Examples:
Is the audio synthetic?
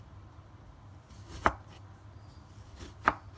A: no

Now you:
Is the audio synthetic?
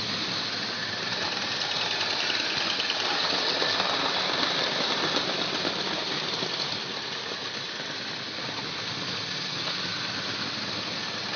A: no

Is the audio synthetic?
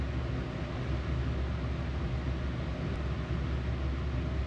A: no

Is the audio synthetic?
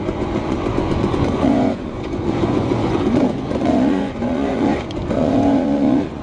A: yes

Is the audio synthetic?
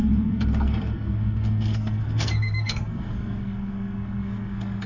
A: yes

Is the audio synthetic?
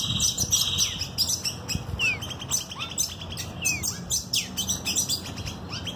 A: no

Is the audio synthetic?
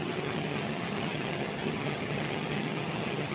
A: yes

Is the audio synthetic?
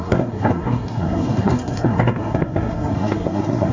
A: yes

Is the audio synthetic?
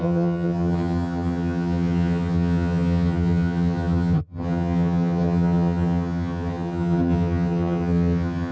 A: yes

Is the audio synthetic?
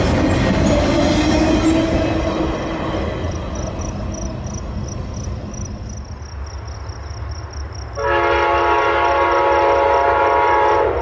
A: no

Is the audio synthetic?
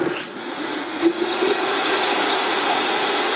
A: yes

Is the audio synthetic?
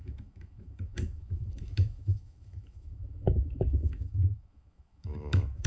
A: yes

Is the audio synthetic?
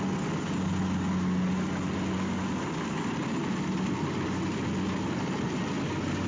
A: no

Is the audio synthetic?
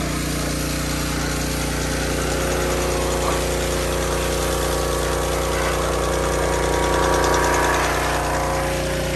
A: no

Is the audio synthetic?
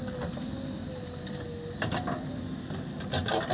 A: no